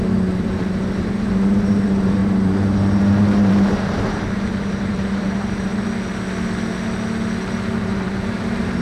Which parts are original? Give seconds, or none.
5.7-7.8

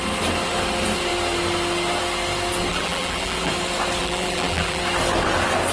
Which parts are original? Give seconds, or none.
0.0-2.7; 3.5-4.0; 4.8-5.7

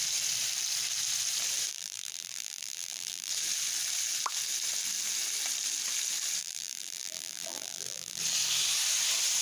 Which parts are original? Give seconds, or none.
0.0-1.7; 3.3-6.4; 8.2-9.4

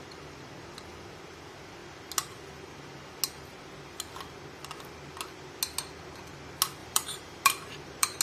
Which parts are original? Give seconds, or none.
0.0-6.8

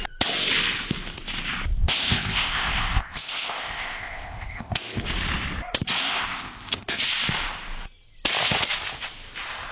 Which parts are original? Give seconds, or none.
0.0-1.8; 5.0-6.0; 7.0-9.7

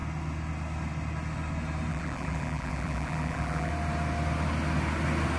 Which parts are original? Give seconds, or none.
0.0-1.9; 3.7-5.4